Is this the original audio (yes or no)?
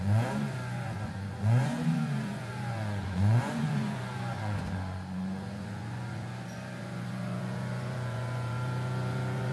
no